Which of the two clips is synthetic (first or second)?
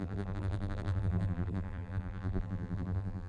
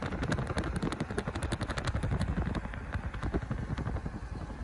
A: first